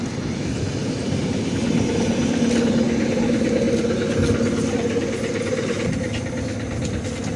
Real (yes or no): yes